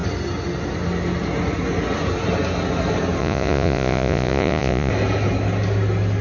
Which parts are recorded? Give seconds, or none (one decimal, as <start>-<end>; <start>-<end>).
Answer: 0.0-3.2; 4.9-6.2